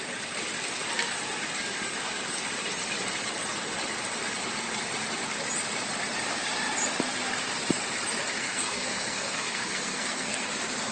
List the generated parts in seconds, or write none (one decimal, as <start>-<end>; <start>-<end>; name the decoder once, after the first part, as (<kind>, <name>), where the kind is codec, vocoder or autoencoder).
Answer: 8.4-10.5 (codec, SNAC)